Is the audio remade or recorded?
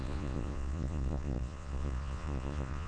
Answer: remade